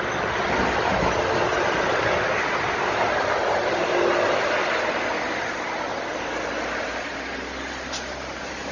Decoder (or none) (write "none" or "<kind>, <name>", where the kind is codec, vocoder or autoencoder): none